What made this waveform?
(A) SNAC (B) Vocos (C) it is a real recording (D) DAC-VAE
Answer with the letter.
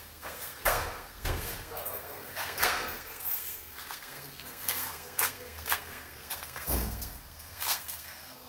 A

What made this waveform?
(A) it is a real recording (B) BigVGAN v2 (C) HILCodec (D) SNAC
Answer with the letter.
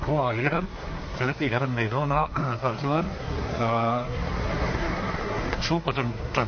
D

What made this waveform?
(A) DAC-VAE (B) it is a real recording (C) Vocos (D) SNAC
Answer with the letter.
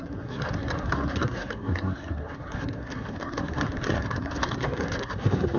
D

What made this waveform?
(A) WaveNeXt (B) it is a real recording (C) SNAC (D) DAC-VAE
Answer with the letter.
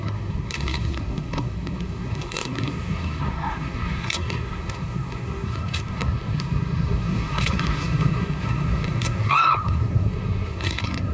C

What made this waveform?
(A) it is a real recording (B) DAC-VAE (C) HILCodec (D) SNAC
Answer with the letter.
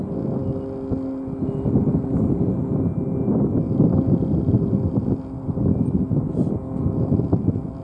A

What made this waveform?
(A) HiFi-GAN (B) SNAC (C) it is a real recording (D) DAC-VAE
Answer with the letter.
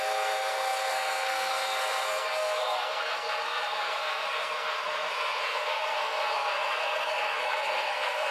B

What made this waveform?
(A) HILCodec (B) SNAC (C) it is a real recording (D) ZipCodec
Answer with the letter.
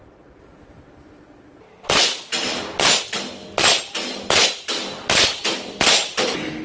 C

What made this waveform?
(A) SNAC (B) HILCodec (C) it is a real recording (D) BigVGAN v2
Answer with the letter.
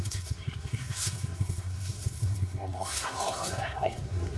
A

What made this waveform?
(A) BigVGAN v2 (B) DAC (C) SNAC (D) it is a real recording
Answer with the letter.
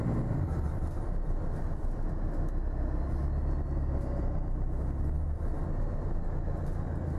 D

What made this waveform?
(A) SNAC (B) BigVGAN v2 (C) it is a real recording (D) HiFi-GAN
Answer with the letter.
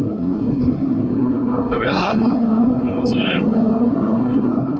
A